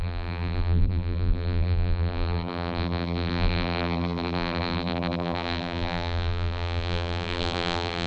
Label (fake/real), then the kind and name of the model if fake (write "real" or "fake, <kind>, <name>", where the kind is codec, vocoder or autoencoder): fake, vocoder, BigVGAN v2